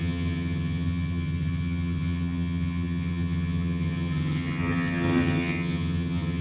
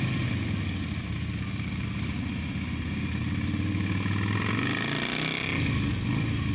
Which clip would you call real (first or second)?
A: second